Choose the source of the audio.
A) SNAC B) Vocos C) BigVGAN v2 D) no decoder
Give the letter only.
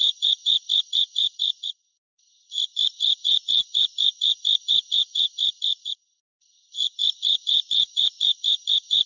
B